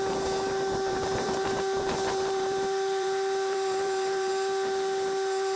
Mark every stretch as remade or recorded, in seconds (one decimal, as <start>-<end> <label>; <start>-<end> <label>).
0.0-0.9 recorded; 0.9-4.3 remade; 4.3-5.6 recorded